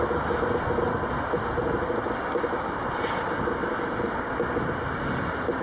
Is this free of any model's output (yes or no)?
yes